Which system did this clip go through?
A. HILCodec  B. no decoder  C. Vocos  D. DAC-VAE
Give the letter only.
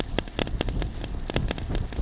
B